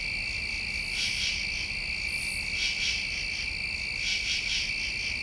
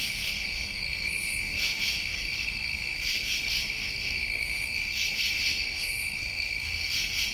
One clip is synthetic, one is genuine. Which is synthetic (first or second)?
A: second